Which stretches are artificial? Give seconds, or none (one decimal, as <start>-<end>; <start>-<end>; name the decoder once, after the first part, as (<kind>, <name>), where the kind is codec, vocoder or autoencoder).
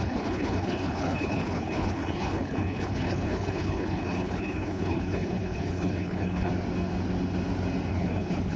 0.0-6.5 (codec, HILCodec); 7.9-8.6